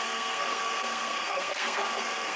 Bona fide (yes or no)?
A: no